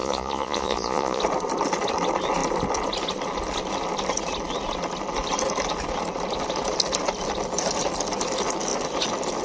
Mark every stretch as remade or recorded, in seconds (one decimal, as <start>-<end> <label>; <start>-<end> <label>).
0.0-1.2 remade; 1.2-9.4 recorded